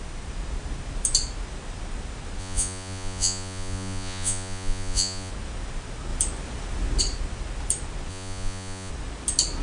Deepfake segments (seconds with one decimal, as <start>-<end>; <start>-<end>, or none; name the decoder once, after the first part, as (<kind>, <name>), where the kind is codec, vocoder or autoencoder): 2.4-5.3 (vocoder, Vocos); 8.1-8.9